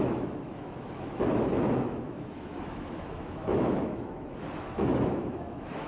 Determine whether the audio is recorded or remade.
remade